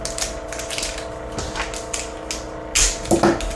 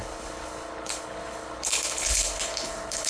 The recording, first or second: first